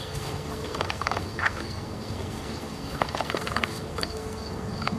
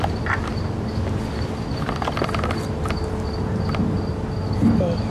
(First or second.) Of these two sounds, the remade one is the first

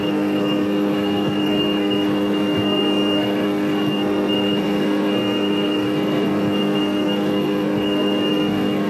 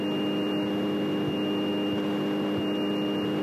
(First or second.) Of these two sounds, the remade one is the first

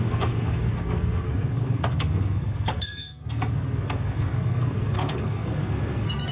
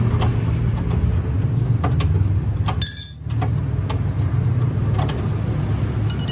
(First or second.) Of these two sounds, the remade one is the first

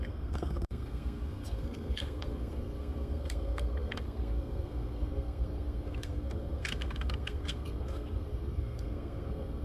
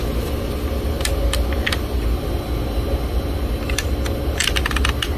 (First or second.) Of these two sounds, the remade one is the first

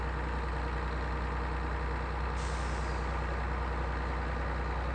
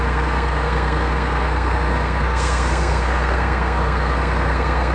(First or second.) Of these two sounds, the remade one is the second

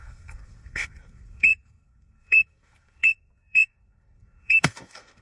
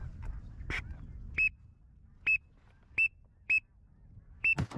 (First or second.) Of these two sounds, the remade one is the first